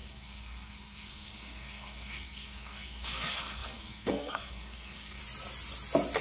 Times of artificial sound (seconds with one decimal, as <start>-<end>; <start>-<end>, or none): 0.0-5.2